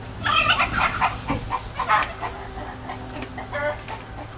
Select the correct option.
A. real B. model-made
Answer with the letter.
A